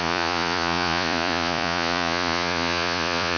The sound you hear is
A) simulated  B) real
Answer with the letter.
A